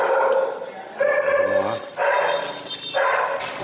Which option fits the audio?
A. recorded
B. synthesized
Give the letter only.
A